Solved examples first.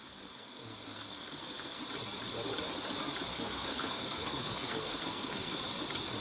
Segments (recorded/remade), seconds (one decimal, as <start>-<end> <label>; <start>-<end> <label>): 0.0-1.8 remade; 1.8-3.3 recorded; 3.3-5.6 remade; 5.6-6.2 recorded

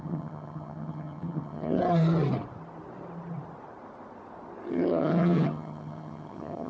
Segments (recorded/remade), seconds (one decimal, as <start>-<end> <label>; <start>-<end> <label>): 0.0-1.8 remade; 1.8-4.7 recorded; 4.7-6.7 remade

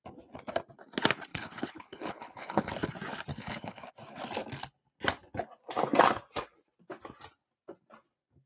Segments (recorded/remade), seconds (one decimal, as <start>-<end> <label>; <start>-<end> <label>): 0.0-1.3 recorded; 1.3-2.7 remade; 2.7-3.3 recorded; 3.3-3.9 remade; 3.9-8.5 recorded

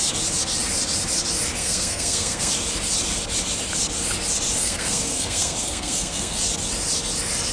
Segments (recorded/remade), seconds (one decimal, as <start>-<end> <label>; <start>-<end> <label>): 0.0-1.6 recorded; 1.6-2.5 remade; 2.5-4.6 recorded; 4.6-6.4 remade; 6.4-7.5 recorded